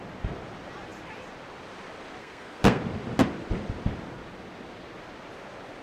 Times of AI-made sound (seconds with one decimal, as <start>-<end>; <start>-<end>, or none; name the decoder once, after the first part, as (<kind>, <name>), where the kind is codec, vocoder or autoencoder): 2.2-2.8 (codec, SNAC)